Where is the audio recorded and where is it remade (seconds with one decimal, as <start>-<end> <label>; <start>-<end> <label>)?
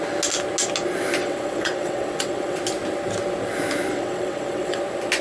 0.0-1.2 recorded; 1.2-2.6 remade; 2.6-3.9 recorded; 3.9-4.8 remade; 4.8-5.2 recorded